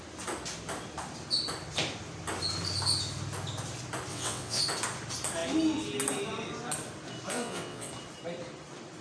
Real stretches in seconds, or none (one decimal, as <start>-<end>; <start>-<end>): 0.0-4.1; 4.6-7.3; 7.9-9.0